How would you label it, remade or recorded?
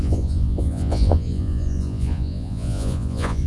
remade